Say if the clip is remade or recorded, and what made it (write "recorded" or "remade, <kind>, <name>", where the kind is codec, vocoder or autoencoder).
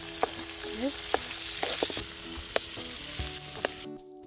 recorded